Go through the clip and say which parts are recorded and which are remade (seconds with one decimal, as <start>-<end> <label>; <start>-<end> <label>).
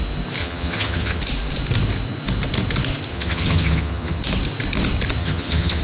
0.0-0.4 recorded; 0.4-1.2 remade; 1.2-3.1 recorded; 3.1-4.2 remade; 4.2-5.2 recorded; 5.2-5.8 remade